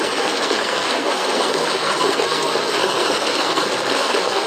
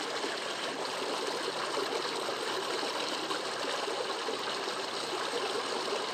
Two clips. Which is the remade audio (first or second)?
first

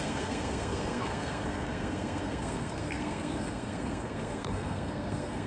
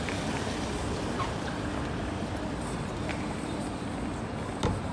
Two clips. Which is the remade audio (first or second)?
first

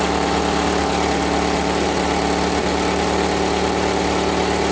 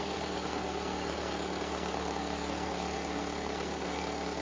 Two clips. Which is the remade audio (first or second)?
second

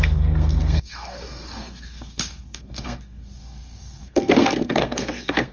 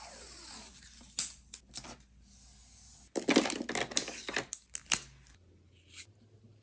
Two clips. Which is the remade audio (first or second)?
first